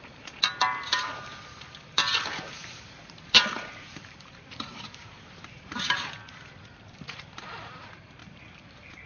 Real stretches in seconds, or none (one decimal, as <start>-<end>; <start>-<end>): none